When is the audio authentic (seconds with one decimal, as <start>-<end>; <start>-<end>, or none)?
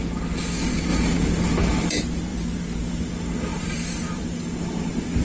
0.0-2.3; 2.9-3.5; 4.2-5.2